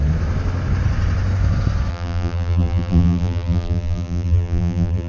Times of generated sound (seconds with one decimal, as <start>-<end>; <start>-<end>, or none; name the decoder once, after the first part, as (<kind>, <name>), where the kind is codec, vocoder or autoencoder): 1.9-5.1 (vocoder, BigVGAN v2)